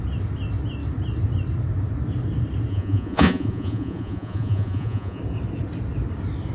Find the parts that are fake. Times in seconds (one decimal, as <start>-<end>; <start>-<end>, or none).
2.7-5.2